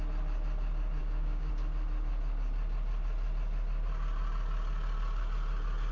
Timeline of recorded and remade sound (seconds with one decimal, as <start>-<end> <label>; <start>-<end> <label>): 0.0-1.0 recorded; 1.0-1.5 remade; 1.5-5.9 recorded